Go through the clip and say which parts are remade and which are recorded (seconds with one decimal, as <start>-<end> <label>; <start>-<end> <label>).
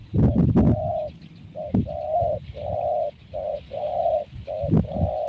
0.0-5.3 recorded